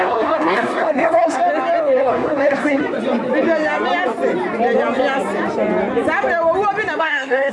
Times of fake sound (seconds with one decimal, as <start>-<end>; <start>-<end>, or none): 0.0-1.4; 2.0-2.8; 7.0-7.5